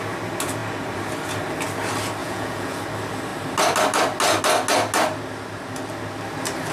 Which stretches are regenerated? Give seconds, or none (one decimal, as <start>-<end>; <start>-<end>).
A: 2.2-2.8